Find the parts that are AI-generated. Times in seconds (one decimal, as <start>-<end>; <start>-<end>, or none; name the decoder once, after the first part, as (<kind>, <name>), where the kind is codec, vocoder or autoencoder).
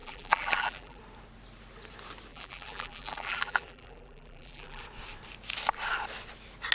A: 0.0-1.0 (vocoder, BigVGAN v2); 2.3-4.8